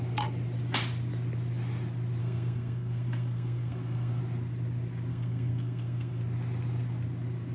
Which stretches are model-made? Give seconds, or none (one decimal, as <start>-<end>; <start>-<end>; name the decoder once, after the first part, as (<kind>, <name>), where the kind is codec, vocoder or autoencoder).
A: 2.2-4.2 (codec, SNAC); 5.1-6.2